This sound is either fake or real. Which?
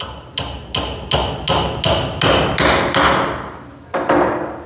real